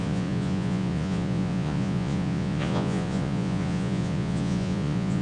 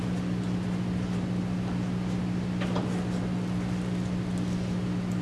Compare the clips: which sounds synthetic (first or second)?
first